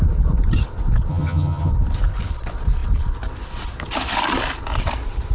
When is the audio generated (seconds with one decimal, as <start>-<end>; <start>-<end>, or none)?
1.1-1.7